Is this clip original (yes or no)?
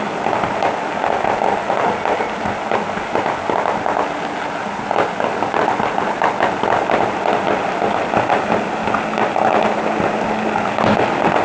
yes